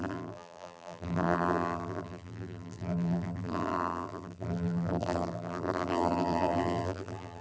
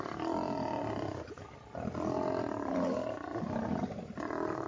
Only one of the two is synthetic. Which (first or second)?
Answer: first